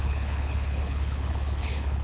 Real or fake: fake